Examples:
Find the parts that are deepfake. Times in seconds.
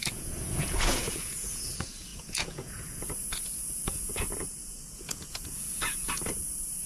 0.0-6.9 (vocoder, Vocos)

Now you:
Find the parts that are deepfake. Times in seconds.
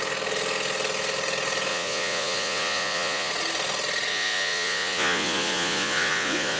1.7-3.3 (vocoder, Vocos); 4.1-6.6